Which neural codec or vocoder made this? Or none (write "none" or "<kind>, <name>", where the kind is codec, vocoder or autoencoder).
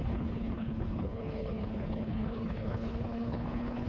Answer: codec, HILCodec